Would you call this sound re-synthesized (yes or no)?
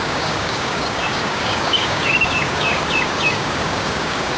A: yes